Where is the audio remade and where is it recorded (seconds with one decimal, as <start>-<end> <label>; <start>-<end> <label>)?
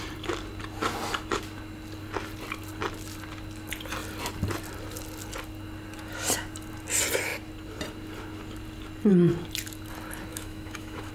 0.0-10.3 recorded; 10.3-11.1 remade